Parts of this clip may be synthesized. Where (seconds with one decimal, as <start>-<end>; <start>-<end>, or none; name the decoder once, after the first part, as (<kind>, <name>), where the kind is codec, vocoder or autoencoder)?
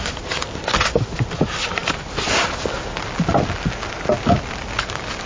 none